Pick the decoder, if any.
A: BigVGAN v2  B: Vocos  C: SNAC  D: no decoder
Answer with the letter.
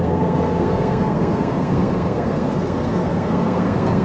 C